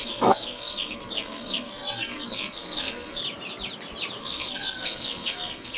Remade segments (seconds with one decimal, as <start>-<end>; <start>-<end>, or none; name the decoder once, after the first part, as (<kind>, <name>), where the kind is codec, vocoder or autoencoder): 0.0-3.2 (codec, SNAC); 4.2-5.8